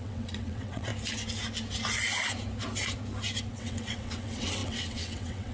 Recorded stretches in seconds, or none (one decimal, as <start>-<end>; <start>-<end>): 0.9-3.5